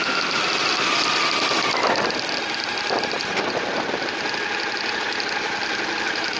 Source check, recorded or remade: recorded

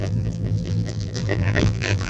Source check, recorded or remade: remade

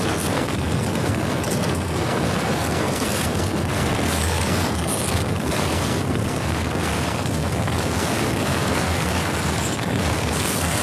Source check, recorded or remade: remade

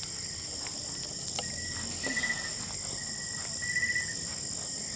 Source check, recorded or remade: recorded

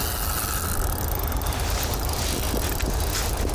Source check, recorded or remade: recorded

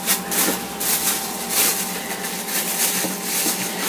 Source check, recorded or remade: recorded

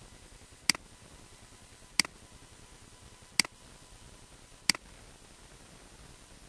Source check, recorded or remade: recorded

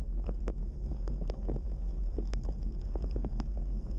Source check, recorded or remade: remade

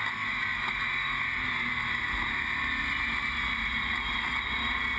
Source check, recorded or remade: recorded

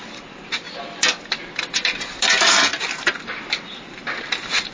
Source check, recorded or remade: recorded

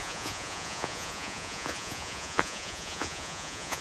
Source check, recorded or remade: remade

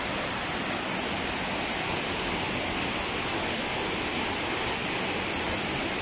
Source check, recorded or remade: recorded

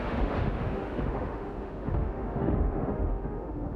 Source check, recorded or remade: remade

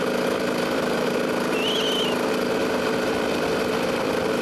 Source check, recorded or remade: recorded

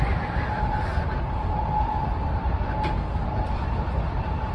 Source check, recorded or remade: recorded